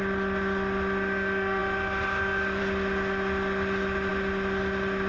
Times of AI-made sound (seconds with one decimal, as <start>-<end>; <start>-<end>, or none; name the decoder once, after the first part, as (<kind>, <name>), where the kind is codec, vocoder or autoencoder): none